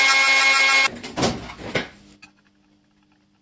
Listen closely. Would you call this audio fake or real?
real